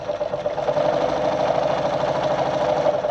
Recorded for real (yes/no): yes